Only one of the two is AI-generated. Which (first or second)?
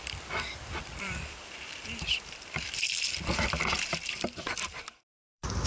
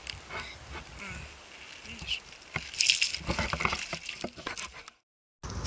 first